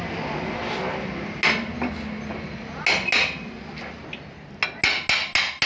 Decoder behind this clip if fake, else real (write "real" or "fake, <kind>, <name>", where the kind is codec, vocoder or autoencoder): real